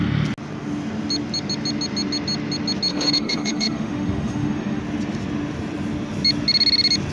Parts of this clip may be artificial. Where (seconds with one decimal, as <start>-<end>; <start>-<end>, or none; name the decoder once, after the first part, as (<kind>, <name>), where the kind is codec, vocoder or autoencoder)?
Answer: 2.9-4.8 (autoencoder, DAC-VAE)